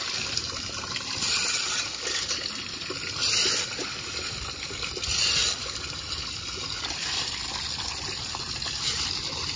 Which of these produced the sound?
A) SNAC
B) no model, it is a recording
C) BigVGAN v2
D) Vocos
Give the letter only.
C